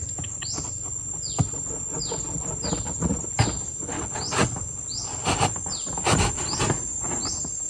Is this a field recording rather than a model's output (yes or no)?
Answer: yes